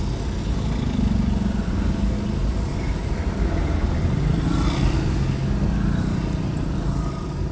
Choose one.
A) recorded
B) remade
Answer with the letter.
A